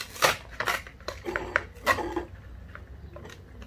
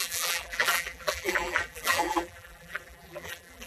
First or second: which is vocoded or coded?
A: second